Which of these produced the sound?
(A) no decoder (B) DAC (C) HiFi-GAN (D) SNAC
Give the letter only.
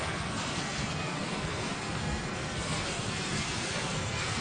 D